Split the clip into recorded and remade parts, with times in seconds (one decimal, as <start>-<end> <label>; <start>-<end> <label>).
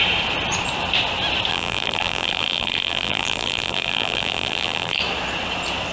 0.0-1.5 recorded; 1.5-5.0 remade; 5.0-5.9 recorded